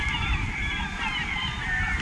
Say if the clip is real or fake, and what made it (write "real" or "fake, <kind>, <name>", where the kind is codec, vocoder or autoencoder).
fake, vocoder, BigVGAN v2